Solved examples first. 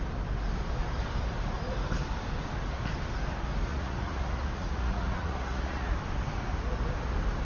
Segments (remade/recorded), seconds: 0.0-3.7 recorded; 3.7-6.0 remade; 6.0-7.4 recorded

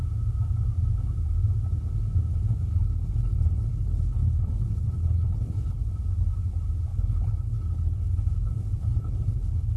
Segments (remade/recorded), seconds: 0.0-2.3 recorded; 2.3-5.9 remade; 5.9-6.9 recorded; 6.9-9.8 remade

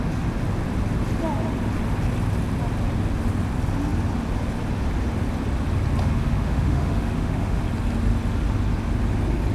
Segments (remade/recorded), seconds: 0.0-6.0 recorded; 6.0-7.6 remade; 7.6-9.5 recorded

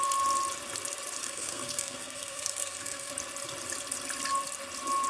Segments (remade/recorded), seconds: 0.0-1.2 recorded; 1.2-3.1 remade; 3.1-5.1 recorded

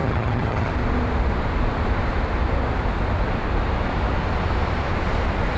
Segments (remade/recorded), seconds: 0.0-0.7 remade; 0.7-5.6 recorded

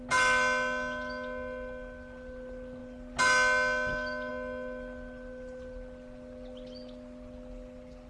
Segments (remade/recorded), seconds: 0.0-8.1 recorded

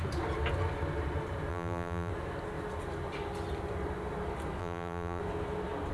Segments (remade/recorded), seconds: 0.0-1.5 recorded; 1.5-2.1 remade; 2.1-4.6 recorded; 4.6-5.2 remade; 5.2-5.9 recorded

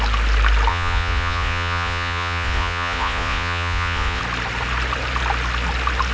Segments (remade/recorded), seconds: 0.0-0.7 recorded; 0.7-4.2 remade; 4.2-6.1 recorded